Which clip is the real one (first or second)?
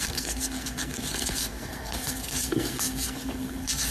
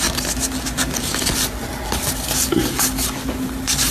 second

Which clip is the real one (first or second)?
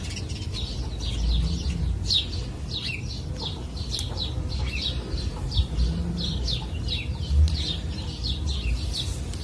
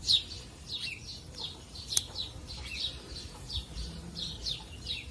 first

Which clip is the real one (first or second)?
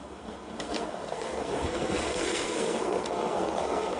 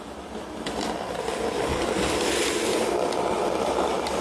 second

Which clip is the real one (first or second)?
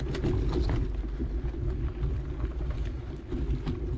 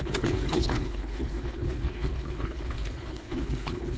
first